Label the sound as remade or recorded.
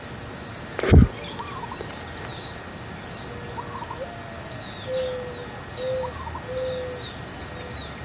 recorded